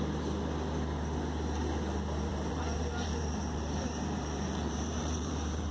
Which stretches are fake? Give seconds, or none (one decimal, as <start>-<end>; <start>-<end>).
2.3-5.7